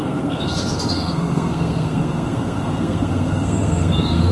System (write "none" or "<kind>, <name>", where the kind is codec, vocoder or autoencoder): codec, SNAC